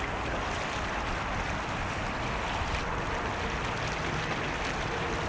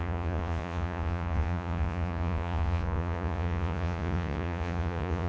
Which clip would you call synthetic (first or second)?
second